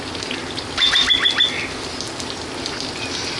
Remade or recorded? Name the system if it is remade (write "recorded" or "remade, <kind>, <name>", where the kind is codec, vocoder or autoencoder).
recorded